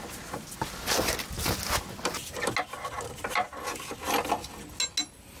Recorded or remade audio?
recorded